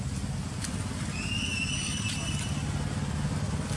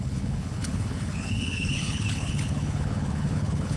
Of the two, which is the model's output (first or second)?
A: second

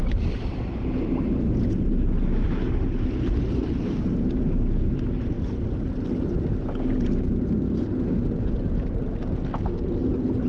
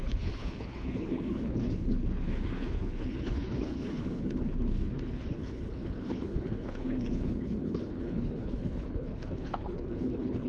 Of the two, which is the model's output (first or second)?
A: second